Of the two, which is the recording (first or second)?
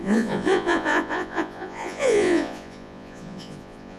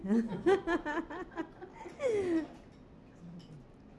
second